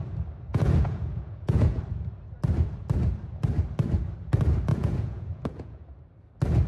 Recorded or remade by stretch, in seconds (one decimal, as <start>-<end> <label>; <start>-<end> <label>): 0.0-0.5 recorded; 0.5-1.8 remade; 1.8-4.7 recorded; 4.7-5.9 remade; 5.9-6.7 recorded